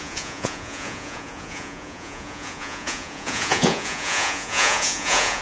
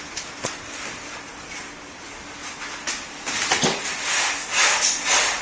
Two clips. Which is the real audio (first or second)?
second